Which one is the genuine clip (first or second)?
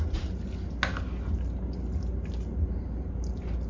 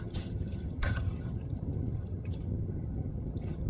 first